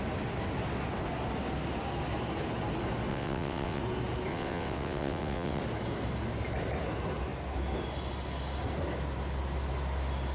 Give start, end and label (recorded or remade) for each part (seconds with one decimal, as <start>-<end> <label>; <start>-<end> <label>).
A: 0.0-3.1 recorded; 3.1-3.8 remade; 3.8-4.3 recorded; 4.3-5.6 remade; 5.6-10.3 recorded